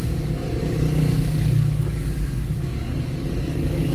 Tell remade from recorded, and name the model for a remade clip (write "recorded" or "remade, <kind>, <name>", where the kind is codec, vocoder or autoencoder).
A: remade, codec, DAC